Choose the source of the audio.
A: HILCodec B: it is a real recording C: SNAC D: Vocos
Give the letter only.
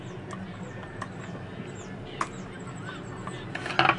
B